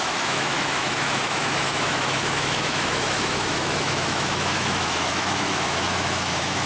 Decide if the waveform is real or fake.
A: fake